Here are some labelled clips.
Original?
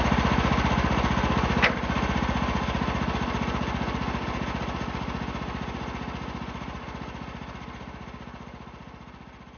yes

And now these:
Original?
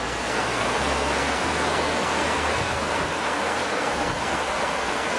no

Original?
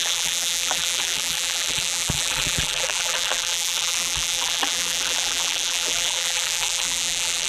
no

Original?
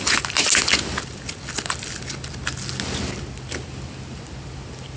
yes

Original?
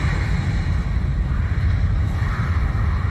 yes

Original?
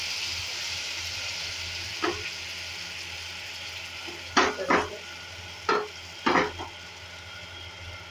yes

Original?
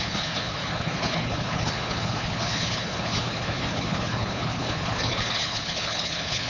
no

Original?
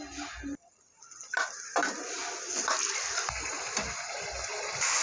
yes